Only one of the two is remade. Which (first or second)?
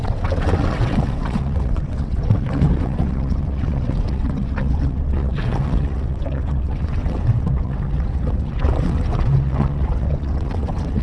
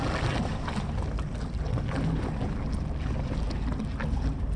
first